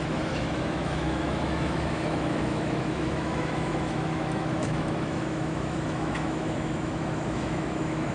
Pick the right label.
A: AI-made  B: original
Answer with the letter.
A